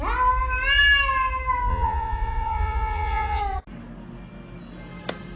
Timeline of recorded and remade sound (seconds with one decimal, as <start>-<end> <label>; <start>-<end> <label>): 0.0-1.7 recorded; 1.7-3.4 remade; 3.4-5.4 recorded